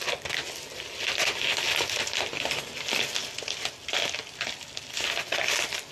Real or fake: real